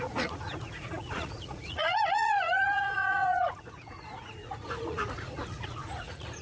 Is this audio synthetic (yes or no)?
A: yes